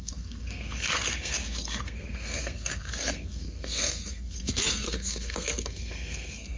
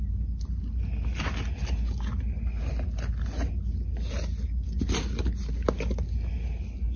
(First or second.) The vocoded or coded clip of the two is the first